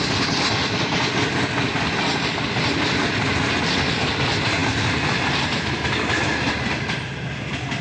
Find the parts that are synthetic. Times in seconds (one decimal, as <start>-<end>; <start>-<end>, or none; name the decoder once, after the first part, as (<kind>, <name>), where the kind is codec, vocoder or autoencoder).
none